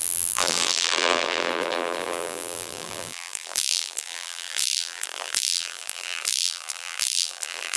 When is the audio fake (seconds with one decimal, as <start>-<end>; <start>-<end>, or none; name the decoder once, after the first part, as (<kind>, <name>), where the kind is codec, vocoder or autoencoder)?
0.0-7.8 (vocoder, BigVGAN v2)